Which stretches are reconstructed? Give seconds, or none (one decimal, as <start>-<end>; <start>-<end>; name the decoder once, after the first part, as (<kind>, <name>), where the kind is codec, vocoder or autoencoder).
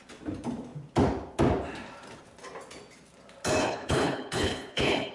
3.6-5.1 (codec, HILCodec)